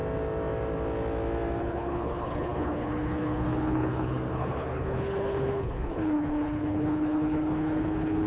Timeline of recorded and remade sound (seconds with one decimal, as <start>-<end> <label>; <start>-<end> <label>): 0.0-1.6 recorded; 1.6-8.3 remade